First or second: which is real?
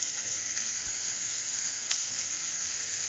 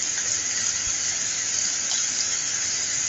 second